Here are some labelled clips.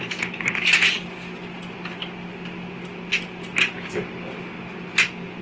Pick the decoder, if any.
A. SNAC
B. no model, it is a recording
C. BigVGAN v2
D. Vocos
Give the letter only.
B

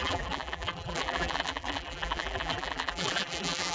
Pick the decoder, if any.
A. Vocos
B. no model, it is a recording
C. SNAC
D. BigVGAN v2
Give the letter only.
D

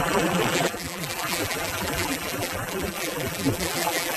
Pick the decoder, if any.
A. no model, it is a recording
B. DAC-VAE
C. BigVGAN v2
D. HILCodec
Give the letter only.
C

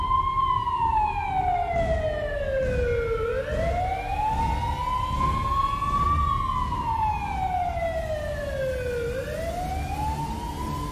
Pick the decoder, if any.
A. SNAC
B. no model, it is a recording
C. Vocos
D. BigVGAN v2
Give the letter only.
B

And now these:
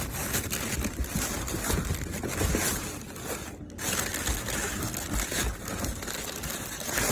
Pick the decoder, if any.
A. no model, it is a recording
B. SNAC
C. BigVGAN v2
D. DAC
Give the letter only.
A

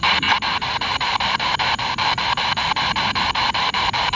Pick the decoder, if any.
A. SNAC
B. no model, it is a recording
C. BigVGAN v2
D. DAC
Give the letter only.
C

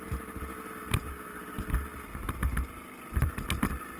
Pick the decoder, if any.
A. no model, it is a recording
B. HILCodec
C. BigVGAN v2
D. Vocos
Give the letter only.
A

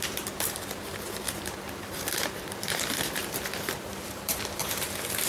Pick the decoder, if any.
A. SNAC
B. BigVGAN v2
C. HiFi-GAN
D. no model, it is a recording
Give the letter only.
B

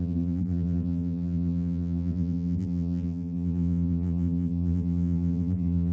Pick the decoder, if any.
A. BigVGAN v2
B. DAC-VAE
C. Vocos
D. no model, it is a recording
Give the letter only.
A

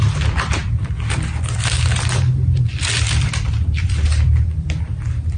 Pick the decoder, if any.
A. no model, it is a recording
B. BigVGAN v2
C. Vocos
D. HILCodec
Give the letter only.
B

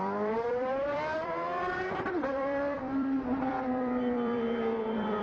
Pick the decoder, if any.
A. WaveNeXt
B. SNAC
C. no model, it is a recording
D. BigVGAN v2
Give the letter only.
D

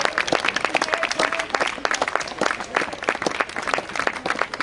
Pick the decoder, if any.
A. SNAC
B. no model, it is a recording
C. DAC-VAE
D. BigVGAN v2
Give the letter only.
B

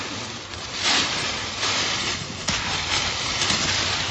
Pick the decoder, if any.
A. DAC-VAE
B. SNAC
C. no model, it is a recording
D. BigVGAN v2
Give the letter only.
D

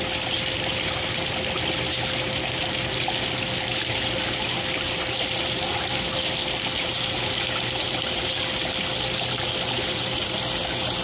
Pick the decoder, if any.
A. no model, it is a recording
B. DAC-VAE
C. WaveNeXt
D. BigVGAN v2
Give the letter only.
A